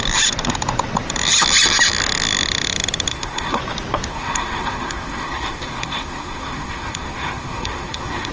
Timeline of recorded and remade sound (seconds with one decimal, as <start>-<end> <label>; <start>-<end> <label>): 0.0-3.1 recorded; 3.1-3.6 remade; 3.6-4.1 recorded; 4.1-8.3 remade